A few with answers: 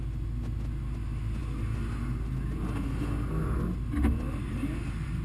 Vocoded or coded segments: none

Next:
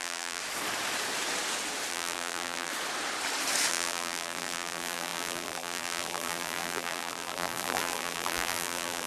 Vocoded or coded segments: 0.0-0.4 (vocoder, BigVGAN v2); 1.9-2.7; 3.7-9.1

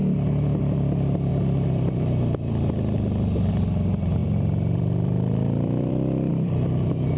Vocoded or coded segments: 0.6-7.2 (vocoder, BigVGAN v2)

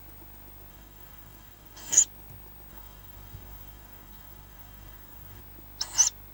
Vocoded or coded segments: 0.7-2.0 (codec, DAC); 2.7-5.4